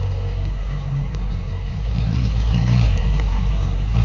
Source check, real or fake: fake